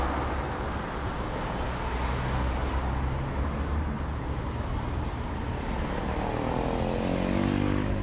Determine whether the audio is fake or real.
real